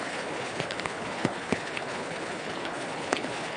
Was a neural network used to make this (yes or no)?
yes